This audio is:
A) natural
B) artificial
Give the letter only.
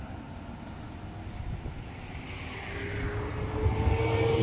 A